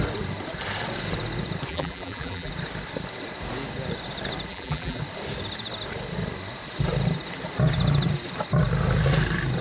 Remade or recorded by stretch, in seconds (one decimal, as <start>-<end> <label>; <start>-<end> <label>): 0.0-1.7 recorded; 1.7-2.5 remade; 2.5-4.5 recorded; 4.5-5.0 remade; 5.0-9.6 recorded